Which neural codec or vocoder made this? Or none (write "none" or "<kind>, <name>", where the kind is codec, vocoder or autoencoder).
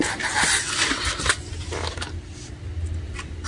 none